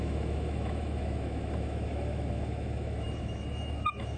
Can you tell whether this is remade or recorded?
remade